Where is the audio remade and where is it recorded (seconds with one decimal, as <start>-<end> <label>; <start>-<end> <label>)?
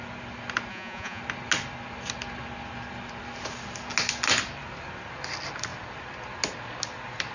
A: 0.0-0.7 recorded; 0.7-1.2 remade; 1.2-7.3 recorded